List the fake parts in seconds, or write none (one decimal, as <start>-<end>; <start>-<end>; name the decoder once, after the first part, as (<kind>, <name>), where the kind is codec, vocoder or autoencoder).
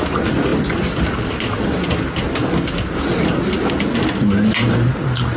none